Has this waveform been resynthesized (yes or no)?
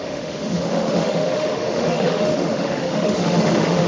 yes